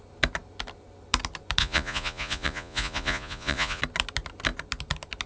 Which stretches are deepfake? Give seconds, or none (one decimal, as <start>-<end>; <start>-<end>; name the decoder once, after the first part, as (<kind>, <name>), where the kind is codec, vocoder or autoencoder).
1.6-3.8 (vocoder, Vocos)